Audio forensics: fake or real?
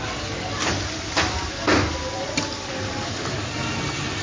real